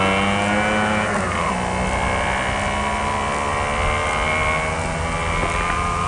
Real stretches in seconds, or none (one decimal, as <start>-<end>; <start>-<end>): 0.0-6.1